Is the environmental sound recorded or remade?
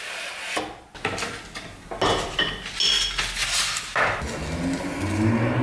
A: recorded